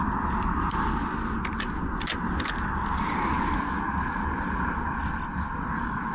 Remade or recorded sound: recorded